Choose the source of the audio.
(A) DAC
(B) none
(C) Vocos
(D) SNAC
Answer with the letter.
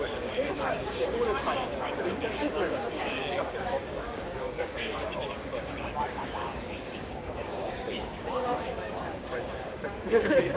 A